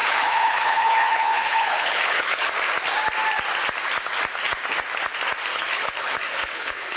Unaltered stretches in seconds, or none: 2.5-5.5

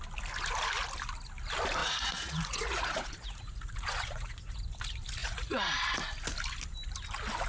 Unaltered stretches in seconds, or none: 0.0-1.8; 4.5-5.2; 5.7-7.5

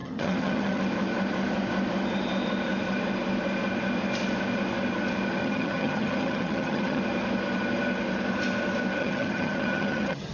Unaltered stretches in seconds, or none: 0.8-5.4; 7.0-9.0